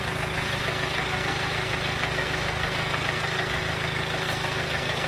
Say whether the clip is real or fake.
fake